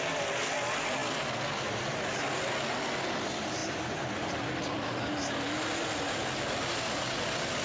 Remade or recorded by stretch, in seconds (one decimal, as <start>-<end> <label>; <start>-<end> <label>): 0.0-7.6 recorded